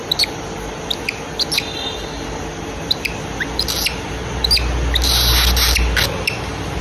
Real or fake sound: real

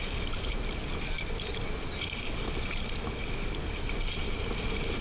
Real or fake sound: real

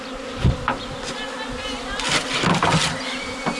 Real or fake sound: real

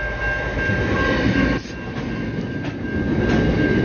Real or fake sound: real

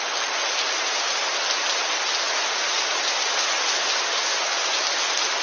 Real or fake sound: real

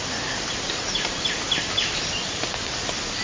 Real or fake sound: real